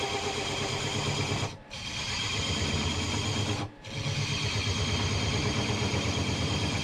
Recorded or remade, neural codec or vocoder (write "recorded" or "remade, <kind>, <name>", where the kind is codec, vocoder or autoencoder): recorded